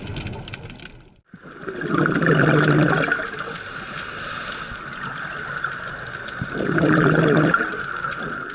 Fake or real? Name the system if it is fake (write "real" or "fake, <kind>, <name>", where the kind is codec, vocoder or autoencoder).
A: real